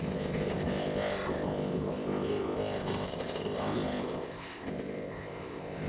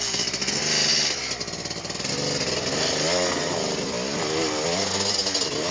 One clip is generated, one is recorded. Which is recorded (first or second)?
second